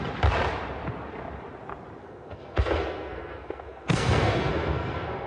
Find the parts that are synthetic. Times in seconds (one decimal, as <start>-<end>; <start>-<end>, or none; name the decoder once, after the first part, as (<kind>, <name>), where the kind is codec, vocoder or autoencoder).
2.0-5.3 (codec, SNAC)